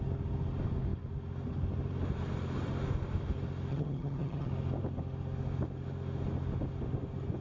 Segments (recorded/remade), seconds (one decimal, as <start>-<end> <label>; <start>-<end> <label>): 0.0-3.7 recorded; 3.7-4.5 remade; 4.5-7.4 recorded